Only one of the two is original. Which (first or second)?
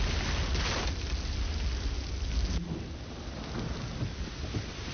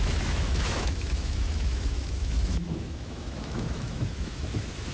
first